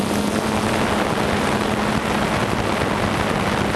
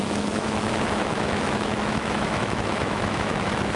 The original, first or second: first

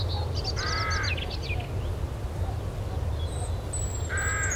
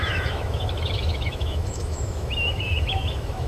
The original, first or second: first